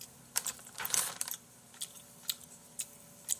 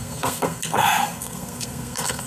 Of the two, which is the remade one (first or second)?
second